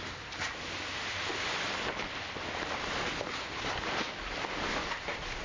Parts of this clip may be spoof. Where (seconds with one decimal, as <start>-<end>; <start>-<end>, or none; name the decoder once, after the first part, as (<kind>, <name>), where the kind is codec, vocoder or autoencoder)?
none